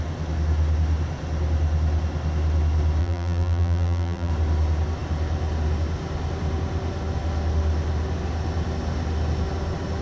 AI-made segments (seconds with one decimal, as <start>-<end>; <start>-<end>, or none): 3.0-4.3